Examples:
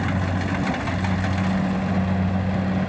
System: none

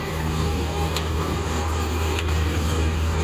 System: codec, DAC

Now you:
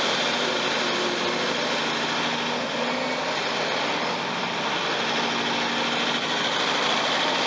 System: none